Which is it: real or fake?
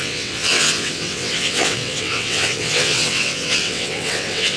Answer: fake